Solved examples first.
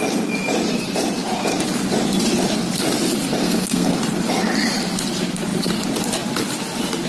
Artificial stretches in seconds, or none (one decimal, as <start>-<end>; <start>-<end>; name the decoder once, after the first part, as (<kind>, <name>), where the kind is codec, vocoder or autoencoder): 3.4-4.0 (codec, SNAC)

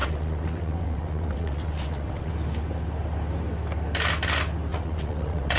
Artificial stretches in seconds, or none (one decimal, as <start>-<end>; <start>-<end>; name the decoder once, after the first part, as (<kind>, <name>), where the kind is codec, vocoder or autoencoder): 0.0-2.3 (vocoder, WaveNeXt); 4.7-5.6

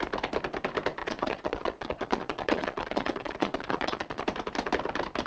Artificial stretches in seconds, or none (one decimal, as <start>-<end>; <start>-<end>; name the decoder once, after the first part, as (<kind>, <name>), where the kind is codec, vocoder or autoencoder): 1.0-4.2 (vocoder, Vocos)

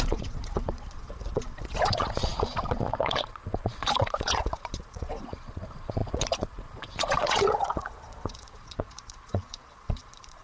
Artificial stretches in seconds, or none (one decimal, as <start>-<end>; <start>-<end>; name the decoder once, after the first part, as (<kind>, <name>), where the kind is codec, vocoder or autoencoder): 0.0-10.4 (vocoder, Vocos)